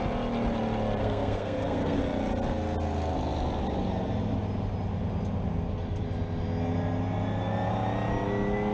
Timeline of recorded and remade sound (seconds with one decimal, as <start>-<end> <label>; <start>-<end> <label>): 0.0-1.0 recorded; 1.0-2.0 remade; 2.0-8.7 recorded